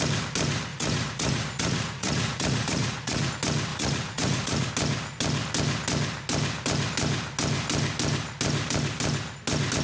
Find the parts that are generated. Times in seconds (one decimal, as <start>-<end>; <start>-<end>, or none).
0.7-3.3; 3.7-4.7